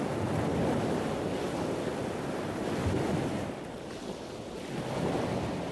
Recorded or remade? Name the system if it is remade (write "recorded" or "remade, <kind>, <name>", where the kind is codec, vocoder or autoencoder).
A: recorded